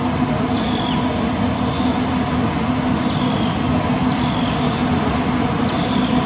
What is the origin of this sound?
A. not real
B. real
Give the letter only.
B